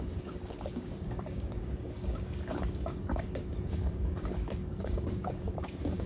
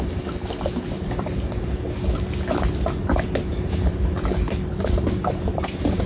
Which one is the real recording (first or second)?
second